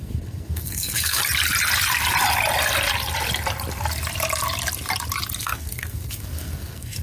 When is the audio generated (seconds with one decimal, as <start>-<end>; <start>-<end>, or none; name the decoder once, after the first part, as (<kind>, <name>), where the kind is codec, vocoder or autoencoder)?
0.0-1.2 (codec, SNAC); 5.4-7.0